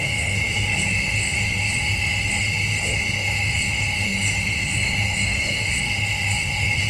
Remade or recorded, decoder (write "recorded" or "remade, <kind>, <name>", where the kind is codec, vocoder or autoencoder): remade, autoencoder, DAC-VAE